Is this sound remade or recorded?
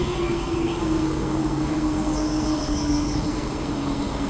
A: remade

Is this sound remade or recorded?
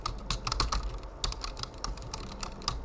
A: recorded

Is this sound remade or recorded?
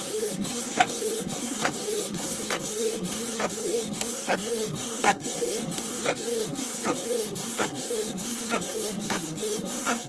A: remade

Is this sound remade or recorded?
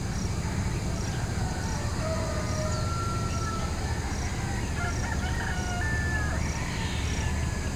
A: recorded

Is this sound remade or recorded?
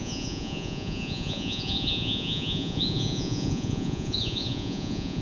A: remade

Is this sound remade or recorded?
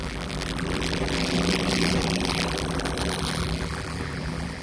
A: remade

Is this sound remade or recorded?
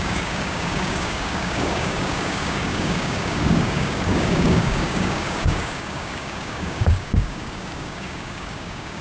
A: remade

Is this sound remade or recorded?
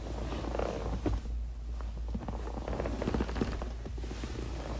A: recorded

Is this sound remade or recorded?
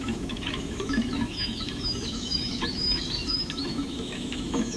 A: remade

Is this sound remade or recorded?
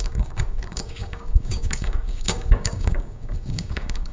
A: remade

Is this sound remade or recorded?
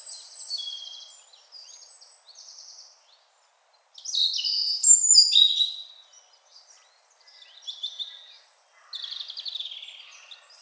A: recorded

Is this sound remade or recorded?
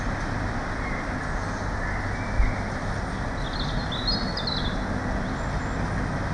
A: recorded